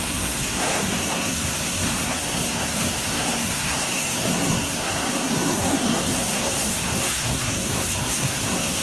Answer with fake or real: fake